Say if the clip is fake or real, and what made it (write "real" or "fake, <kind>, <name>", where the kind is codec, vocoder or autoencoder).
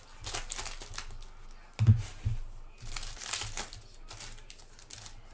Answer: real